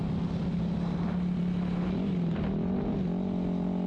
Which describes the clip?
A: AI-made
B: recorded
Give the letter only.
B